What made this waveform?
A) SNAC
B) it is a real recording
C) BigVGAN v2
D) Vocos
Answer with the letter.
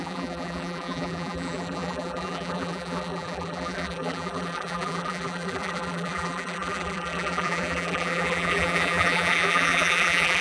C